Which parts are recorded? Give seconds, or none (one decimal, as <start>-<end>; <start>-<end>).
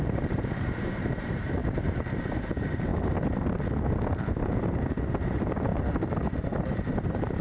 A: 2.9-4.9; 5.7-6.4